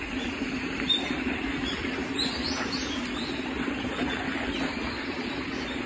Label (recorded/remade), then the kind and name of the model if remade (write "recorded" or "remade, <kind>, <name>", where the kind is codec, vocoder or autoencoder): recorded